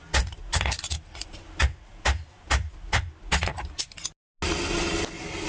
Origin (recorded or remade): recorded